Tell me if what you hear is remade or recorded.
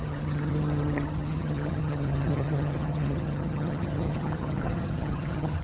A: remade